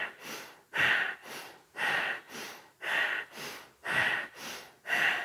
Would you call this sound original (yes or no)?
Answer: yes